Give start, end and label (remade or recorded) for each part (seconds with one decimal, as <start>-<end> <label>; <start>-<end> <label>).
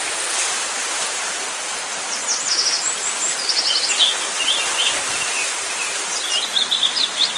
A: 0.0-7.4 recorded